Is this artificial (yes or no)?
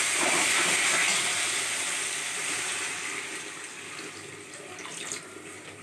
no